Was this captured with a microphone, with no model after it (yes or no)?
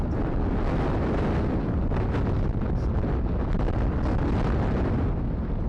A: yes